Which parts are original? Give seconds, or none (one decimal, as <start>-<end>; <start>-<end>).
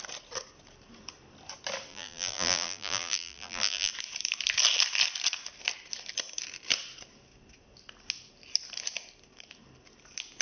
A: 0.0-1.9; 3.9-10.4